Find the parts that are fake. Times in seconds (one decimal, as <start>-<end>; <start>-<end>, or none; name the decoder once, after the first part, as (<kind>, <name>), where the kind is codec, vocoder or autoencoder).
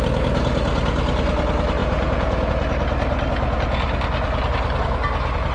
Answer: 1.8-2.5 (vocoder, Vocos)